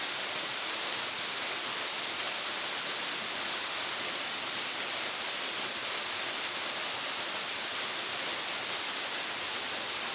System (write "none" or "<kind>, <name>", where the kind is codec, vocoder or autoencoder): none